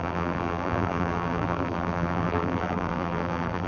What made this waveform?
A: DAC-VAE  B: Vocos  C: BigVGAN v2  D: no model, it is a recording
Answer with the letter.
C